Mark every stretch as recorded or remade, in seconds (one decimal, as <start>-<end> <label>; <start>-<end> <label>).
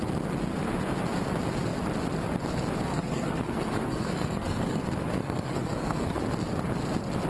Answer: 0.0-2.9 recorded; 2.9-4.8 remade; 4.8-5.2 recorded; 5.2-6.2 remade; 6.2-7.3 recorded